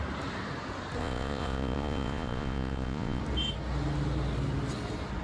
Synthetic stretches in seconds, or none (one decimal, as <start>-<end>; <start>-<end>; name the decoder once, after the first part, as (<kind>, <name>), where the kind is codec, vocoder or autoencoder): 1.0-3.2 (vocoder, Vocos)